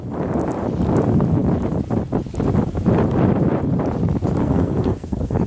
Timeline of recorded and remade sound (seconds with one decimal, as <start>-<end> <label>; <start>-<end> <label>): 0.0-4.4 recorded; 4.4-5.5 remade